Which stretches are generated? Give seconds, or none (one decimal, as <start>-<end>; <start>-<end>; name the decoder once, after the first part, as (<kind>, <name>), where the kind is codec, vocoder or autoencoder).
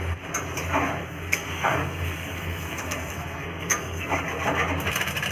1.0-4.1 (codec, SNAC)